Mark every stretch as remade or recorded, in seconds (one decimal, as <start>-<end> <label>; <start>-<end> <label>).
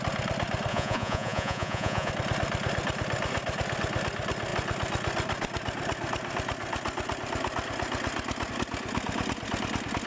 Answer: 0.0-0.7 recorded; 0.7-2.1 remade; 2.1-10.1 recorded